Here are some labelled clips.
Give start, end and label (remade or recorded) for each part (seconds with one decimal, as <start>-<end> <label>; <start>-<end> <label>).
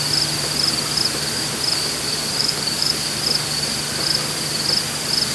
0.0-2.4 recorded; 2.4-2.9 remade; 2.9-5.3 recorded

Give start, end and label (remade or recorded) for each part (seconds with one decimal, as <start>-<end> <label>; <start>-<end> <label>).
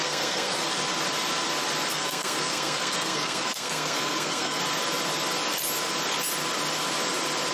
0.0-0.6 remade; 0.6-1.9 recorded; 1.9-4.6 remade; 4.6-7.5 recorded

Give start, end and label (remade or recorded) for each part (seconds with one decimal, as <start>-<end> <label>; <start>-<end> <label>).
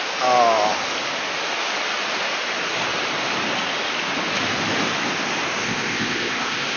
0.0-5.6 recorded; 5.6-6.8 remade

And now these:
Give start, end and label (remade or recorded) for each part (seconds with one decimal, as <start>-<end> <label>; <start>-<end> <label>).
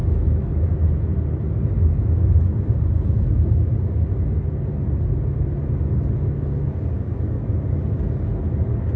0.0-0.7 remade; 0.7-9.0 recorded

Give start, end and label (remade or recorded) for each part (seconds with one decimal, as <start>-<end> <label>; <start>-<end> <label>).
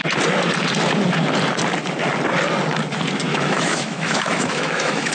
0.0-3.3 recorded; 3.3-5.1 remade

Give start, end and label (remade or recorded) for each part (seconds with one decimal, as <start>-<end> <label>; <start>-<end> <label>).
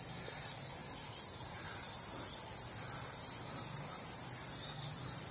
0.0-5.3 recorded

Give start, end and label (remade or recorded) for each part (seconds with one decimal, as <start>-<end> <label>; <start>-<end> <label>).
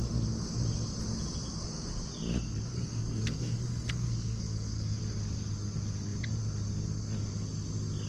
0.0-2.7 recorded; 2.7-5.0 remade; 5.0-8.1 recorded